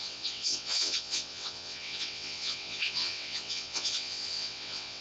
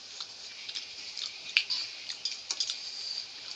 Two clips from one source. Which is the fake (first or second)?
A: first